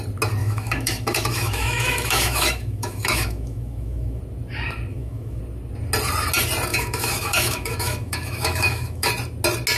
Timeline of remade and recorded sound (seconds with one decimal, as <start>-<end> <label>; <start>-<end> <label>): 0.0-0.4 recorded; 0.4-4.2 remade; 4.2-4.9 recorded; 4.9-5.4 remade; 5.4-6.7 recorded; 6.7-9.1 remade; 9.1-9.8 recorded

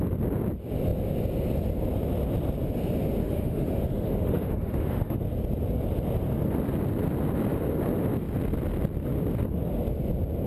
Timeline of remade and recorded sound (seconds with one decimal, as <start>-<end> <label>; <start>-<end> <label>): 0.0-3.2 recorded; 3.2-5.2 remade; 5.2-10.5 recorded

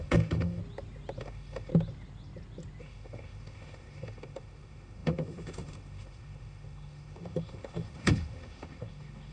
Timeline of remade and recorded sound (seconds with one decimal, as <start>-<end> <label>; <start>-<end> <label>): 0.0-0.6 remade; 0.6-1.2 recorded; 1.2-1.7 remade; 1.7-2.8 recorded; 2.8-9.3 remade

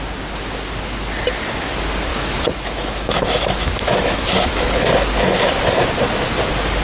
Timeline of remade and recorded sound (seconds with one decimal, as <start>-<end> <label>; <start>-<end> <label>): 0.0-2.1 recorded; 2.1-4.9 remade; 4.9-6.8 recorded